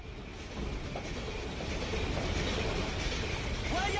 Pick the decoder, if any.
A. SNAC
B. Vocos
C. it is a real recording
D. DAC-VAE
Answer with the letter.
C